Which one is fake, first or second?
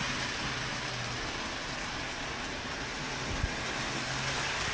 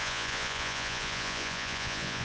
second